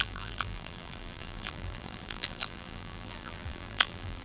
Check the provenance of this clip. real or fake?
fake